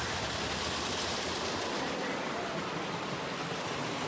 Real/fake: real